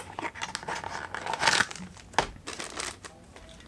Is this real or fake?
real